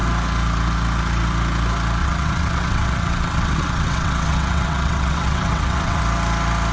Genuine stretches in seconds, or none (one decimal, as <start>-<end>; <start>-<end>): 0.0-2.0; 6.0-6.7